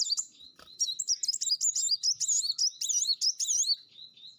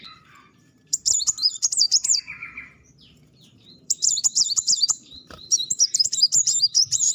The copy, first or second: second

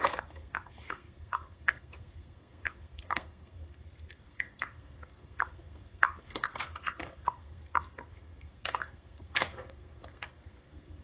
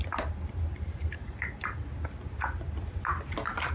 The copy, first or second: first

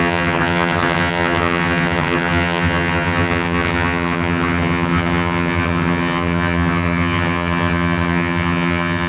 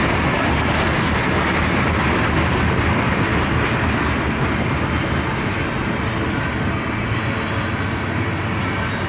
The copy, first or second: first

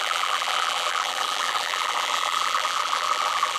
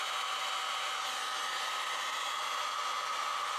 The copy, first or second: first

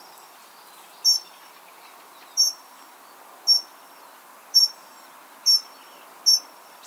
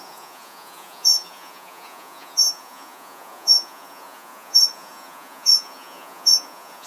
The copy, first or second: second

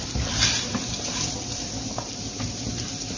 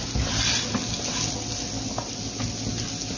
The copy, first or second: first